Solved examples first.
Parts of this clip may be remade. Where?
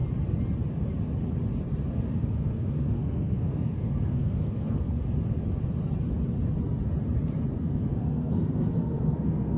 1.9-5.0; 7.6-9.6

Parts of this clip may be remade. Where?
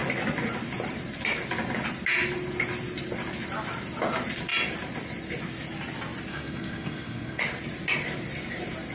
6.3-7.4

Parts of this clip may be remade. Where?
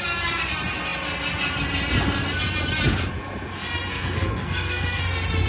3.9-5.0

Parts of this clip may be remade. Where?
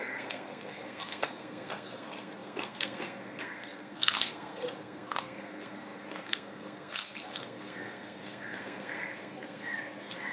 0.0-10.3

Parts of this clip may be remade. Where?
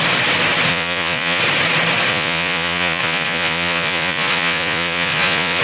0.7-1.4; 2.1-5.6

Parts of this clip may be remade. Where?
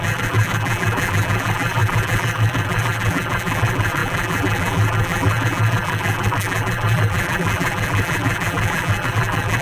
0.0-9.6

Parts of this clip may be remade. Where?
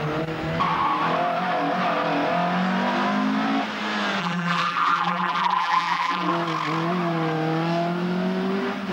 4.2-6.3